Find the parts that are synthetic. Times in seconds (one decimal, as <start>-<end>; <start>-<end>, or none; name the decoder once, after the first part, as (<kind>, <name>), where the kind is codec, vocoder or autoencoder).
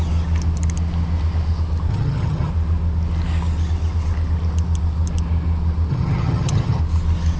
1.9-2.5 (vocoder, HiFi-GAN); 5.9-6.8